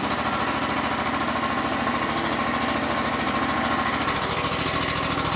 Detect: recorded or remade recorded